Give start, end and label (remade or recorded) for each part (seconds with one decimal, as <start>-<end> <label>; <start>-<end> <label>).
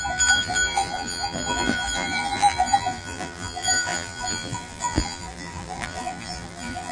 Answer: 0.0-6.9 remade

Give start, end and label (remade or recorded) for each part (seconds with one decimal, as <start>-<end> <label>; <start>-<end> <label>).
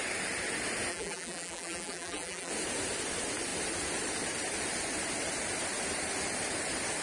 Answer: 0.0-0.9 recorded; 0.9-2.5 remade; 2.5-7.0 recorded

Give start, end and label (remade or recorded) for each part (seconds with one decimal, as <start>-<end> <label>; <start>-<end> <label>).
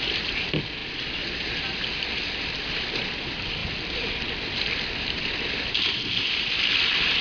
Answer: 0.0-3.6 remade; 3.6-5.0 recorded; 5.0-7.2 remade